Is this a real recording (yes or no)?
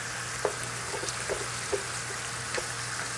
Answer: yes